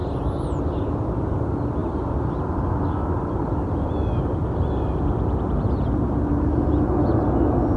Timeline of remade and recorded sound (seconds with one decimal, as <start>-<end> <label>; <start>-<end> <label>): 0.0-7.8 recorded